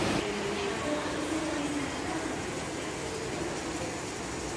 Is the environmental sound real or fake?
real